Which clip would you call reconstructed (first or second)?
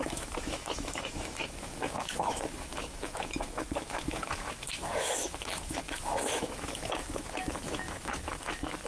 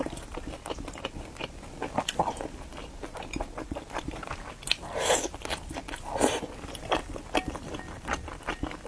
first